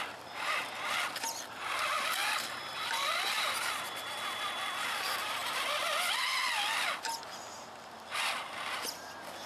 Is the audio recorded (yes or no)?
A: yes